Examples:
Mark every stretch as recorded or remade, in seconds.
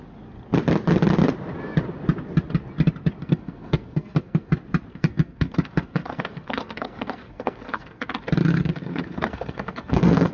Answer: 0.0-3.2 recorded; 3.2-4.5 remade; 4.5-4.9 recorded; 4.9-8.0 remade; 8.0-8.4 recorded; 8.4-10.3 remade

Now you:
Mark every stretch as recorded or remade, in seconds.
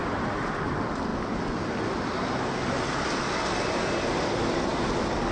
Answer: 0.0-5.3 recorded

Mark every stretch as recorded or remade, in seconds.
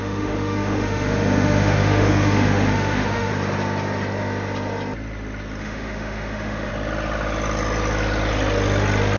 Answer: 0.0-3.3 remade; 3.3-5.6 recorded; 5.6-6.7 remade; 6.7-9.2 recorded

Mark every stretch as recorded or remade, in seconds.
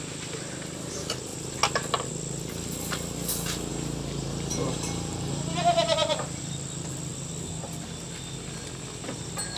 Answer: 0.0-3.7 recorded; 3.7-6.4 remade; 6.4-9.6 recorded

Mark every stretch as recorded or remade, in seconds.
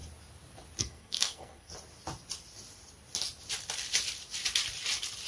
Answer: 0.0-0.8 recorded; 0.8-1.7 remade; 1.7-5.3 recorded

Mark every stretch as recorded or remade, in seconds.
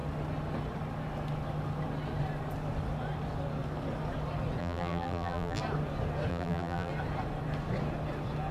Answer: 0.0-4.6 recorded; 4.6-5.6 remade; 5.6-6.3 recorded; 6.3-6.9 remade; 6.9-8.5 recorded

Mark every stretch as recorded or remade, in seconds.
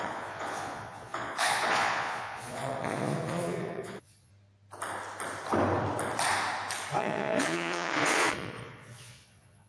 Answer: 0.0-4.3 remade; 4.3-7.0 recorded; 7.0-9.7 remade